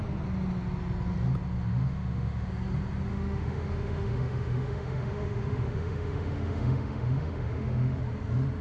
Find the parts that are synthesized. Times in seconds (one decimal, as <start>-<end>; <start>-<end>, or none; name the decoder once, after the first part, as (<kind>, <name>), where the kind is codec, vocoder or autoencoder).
1.7-2.5 (autoencoder, DAC-VAE); 3.1-8.0